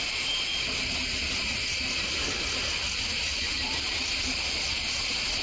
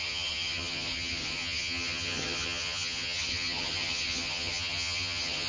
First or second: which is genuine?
first